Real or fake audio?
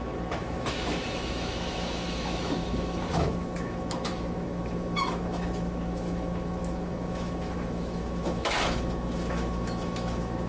fake